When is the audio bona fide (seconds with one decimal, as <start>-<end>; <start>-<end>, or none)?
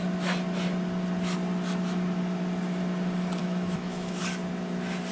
0.0-3.4; 4.2-5.1